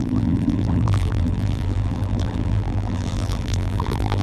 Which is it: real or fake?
fake